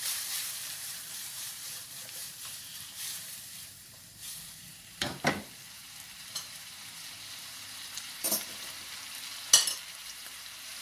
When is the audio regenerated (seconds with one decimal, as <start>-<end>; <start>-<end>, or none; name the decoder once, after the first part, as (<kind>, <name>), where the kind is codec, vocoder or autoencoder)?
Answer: 0.0-8.8 (vocoder, BigVGAN v2); 9.9-10.8